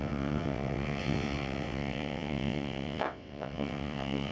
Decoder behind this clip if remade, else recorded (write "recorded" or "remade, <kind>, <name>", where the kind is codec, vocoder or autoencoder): remade, vocoder, WaveNeXt